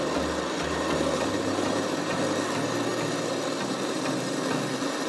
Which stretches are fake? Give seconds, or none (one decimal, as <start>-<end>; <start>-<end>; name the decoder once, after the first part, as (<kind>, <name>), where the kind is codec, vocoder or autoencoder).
0.7-2.2 (vocoder, BigVGAN v2)